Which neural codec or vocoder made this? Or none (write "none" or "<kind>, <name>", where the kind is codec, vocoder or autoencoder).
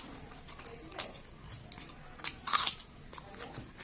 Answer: none